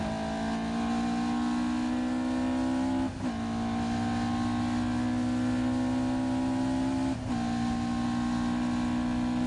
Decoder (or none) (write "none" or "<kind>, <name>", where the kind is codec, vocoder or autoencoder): none